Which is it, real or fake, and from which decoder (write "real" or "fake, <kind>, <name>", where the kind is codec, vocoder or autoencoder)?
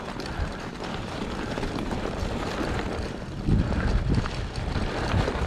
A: fake, vocoder, BigVGAN v2